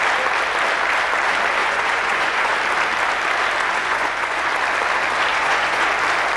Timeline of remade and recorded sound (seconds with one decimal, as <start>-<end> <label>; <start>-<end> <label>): 0.0-1.6 recorded; 1.6-2.5 remade; 2.5-3.8 recorded; 3.8-4.5 remade; 4.5-5.3 recorded; 5.3-5.9 remade; 5.9-6.4 recorded